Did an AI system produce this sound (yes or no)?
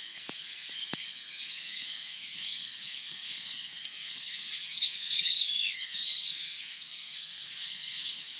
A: yes